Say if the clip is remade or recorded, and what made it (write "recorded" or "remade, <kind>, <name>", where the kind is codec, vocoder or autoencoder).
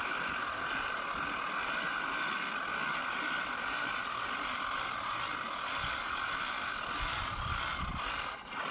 recorded